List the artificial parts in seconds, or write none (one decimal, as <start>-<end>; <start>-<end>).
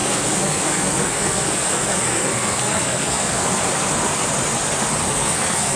0.0-3.6; 5.1-5.8